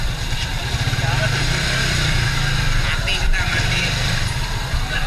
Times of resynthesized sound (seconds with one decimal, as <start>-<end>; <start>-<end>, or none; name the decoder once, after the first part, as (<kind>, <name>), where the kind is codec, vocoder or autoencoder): 3.5-4.1 (vocoder, BigVGAN v2)